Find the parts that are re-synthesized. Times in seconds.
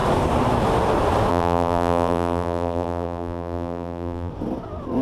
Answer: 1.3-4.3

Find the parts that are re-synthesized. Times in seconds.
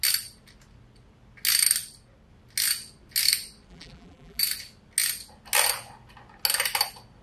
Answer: 3.7-4.4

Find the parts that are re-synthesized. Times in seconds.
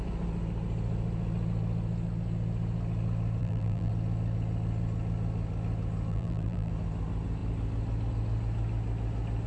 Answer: 3.4-3.9; 6.1-6.7